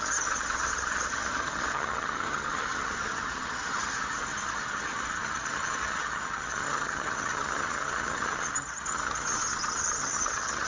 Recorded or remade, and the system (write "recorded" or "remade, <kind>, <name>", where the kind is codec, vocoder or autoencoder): remade, vocoder, HiFi-GAN